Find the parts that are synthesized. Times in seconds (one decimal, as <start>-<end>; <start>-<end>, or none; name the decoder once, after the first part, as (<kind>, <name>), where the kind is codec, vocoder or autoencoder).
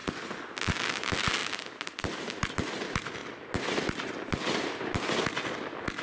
none